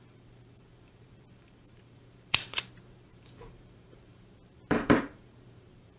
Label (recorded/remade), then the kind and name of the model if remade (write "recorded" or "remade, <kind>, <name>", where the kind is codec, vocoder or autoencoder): remade, vocoder, BigVGAN v2